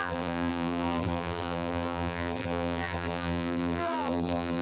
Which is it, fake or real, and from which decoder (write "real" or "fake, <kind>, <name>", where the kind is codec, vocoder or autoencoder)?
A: fake, vocoder, BigVGAN v2